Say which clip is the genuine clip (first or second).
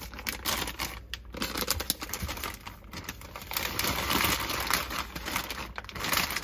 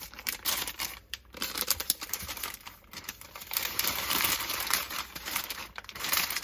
first